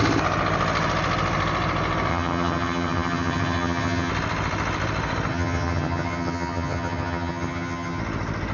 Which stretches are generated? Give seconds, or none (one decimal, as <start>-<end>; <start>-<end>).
2.1-4.1; 5.3-8.0